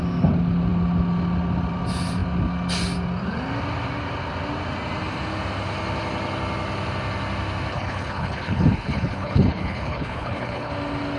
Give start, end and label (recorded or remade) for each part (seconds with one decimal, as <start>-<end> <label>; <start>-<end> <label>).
0.0-7.7 recorded; 7.7-10.7 remade; 10.7-11.2 recorded